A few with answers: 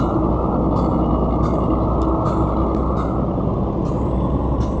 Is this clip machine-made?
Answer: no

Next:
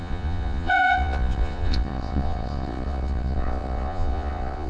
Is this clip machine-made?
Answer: yes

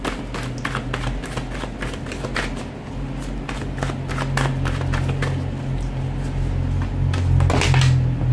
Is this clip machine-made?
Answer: no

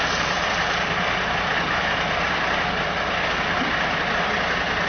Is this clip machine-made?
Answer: no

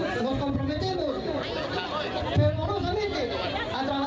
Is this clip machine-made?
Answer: no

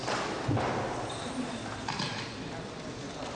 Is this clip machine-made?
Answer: no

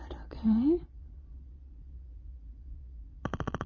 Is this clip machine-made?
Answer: yes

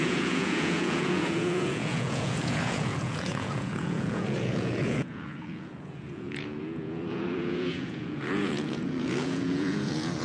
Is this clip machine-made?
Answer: yes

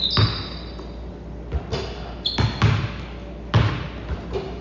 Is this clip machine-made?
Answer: no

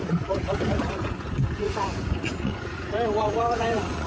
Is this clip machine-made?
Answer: yes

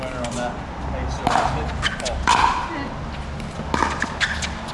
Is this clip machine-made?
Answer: no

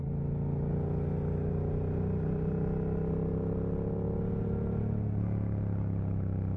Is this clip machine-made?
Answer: no